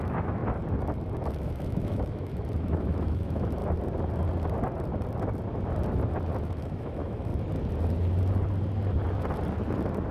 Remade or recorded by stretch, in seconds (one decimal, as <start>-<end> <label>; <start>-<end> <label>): 0.0-0.4 remade; 0.4-1.3 recorded; 1.3-3.6 remade; 3.6-6.4 recorded; 6.4-7.3 remade; 7.3-10.1 recorded